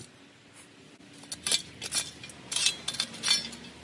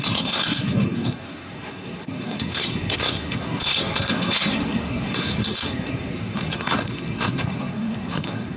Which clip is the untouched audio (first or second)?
first